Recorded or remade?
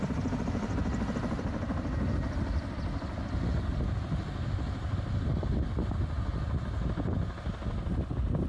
recorded